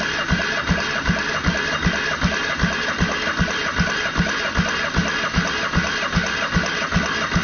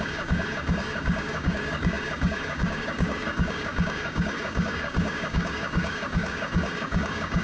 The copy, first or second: second